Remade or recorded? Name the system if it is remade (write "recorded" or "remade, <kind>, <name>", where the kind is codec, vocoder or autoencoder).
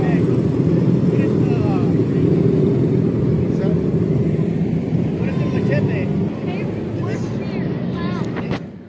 remade, vocoder, BigVGAN v2